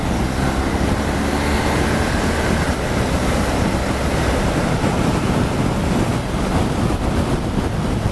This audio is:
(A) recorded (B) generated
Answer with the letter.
A